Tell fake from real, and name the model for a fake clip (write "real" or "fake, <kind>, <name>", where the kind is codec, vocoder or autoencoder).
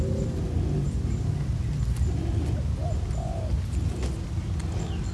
real